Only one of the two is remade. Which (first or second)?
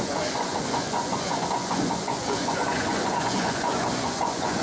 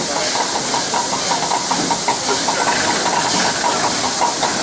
first